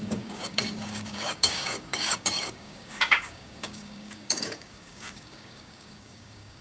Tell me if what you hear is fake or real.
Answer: fake